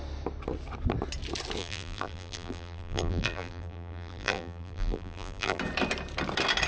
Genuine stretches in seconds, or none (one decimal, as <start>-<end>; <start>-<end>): 0.0-1.6; 5.6-6.7